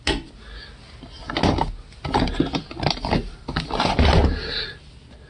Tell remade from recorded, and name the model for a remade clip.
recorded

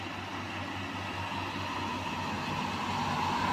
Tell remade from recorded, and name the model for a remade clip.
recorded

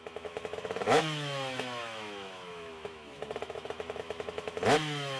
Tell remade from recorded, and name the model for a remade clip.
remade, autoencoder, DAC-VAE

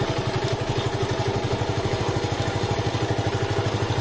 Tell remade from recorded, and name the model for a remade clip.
recorded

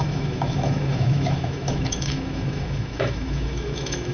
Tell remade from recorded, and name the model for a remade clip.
remade, autoencoder, DAC-VAE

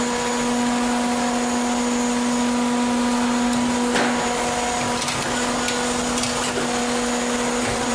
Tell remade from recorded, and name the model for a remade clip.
recorded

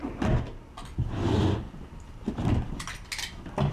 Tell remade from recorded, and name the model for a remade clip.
recorded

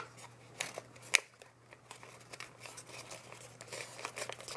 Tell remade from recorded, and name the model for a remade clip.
recorded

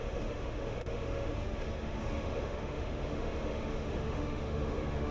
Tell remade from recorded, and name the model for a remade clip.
remade, autoencoder, DAC-VAE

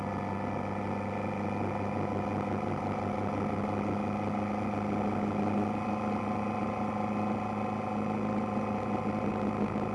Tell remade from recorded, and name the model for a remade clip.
recorded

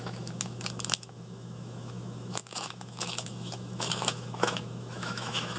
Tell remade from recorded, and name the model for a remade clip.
remade, autoencoder, DAC-VAE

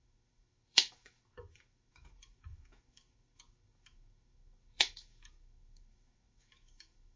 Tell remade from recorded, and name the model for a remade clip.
remade, autoencoder, DAC-VAE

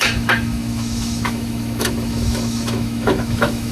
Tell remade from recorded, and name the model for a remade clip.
remade, autoencoder, DAC-VAE